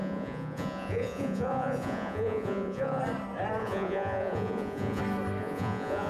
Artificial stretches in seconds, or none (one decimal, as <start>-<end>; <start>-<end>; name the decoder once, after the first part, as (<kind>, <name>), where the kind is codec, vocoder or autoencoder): 0.0-3.0 (vocoder, Vocos); 3.6-5.0; 5.4-6.1